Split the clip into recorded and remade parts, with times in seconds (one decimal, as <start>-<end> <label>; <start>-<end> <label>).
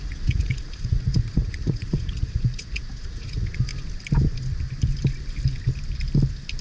0.0-3.7 remade; 3.7-6.6 recorded